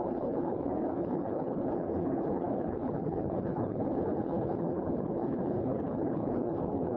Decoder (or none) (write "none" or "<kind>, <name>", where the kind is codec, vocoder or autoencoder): codec, HILCodec